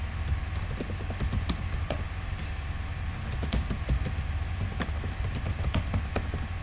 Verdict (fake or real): real